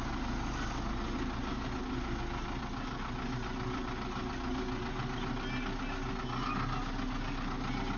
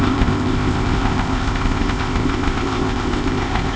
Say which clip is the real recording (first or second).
first